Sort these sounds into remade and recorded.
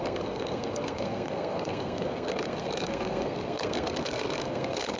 remade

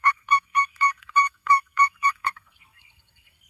remade